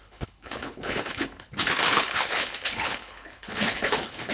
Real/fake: fake